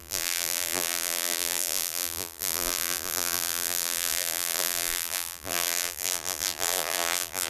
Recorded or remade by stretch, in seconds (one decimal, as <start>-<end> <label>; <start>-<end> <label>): 0.0-7.5 remade

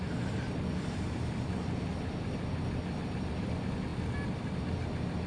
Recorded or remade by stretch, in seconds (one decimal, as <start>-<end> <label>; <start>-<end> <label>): 0.0-5.3 recorded

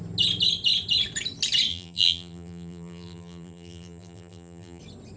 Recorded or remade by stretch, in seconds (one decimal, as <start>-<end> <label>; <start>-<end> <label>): 0.0-1.7 recorded; 1.7-4.8 remade; 4.8-5.2 recorded

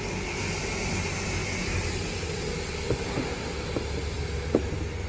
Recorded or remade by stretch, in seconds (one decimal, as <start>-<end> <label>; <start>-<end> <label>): 0.0-5.1 recorded